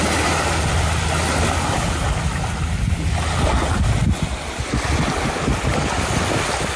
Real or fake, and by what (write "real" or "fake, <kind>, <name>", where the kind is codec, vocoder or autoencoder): real